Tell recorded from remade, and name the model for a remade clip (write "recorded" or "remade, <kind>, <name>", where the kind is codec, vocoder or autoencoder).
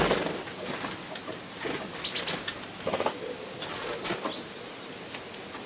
recorded